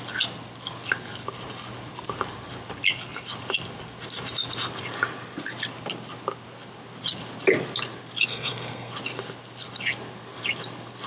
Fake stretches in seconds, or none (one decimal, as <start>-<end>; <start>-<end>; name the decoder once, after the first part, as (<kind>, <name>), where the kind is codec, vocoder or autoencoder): 8.3-8.9 (codec, SNAC)